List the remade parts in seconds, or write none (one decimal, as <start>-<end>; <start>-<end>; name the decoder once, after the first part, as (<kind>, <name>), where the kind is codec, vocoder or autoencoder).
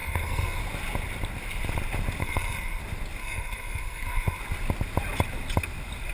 0.0-0.6 (codec, SNAC); 2.2-2.8; 3.2-4.4